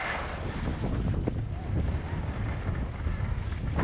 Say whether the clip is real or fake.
real